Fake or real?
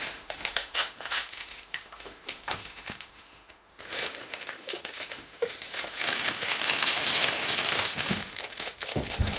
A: fake